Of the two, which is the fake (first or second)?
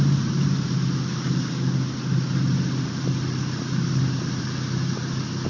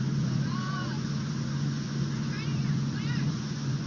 second